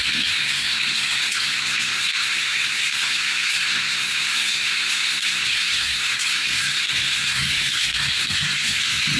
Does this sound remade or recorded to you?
remade